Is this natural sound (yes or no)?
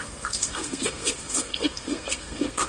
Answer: no